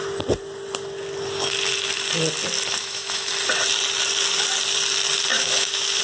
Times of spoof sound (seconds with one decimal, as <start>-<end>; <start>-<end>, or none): 2.8-3.3; 5.3-6.0

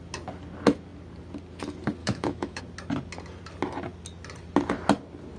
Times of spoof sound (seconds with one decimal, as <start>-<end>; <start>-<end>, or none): 2.0-2.6